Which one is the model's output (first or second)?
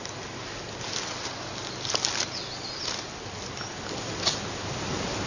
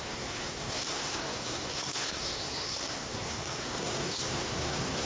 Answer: second